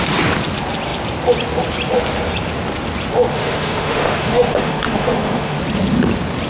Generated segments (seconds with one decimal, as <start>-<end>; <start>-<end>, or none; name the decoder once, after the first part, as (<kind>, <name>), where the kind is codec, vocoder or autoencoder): 3.3-5.6 (autoencoder, DAC-VAE)